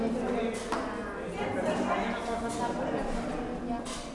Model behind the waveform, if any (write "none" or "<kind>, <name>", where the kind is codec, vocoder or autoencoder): none